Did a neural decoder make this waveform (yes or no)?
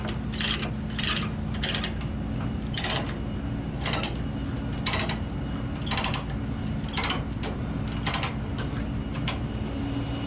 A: no